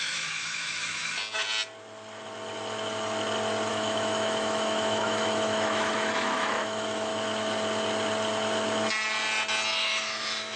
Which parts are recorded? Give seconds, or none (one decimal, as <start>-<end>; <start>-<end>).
1.2-3.7; 7.1-9.7